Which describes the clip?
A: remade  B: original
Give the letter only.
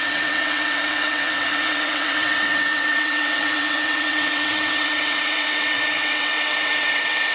A